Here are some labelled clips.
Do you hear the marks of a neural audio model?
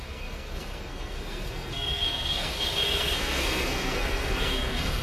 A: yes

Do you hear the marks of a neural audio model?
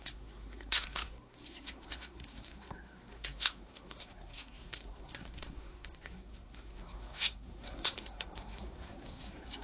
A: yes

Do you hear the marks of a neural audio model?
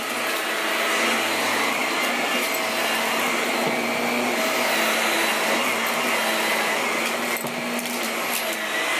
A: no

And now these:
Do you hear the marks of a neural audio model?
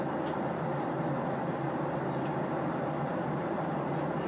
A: no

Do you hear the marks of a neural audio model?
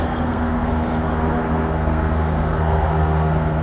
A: yes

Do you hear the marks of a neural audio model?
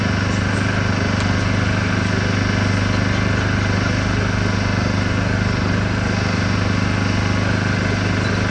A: no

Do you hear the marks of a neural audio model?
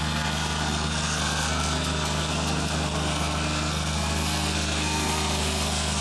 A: yes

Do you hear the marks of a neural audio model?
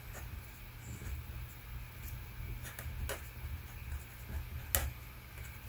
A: no